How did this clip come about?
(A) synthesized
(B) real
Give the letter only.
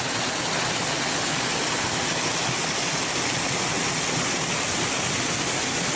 B